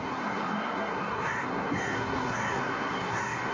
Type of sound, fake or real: fake